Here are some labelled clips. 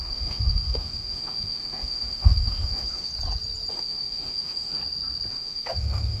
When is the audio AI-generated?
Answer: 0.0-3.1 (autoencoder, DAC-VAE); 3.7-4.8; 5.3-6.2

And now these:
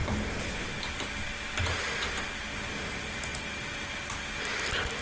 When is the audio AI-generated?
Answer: none

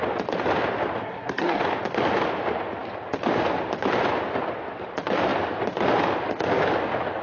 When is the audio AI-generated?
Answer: 1.0-1.6 (codec, SNAC)